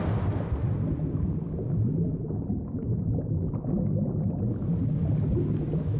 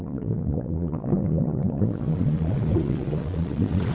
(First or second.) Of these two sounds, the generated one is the second